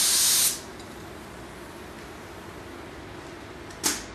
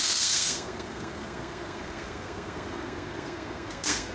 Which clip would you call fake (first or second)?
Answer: second